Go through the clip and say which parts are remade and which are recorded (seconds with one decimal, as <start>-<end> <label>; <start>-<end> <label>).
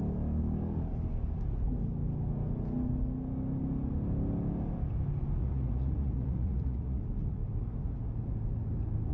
0.0-5.4 recorded; 5.4-7.0 remade; 7.0-9.1 recorded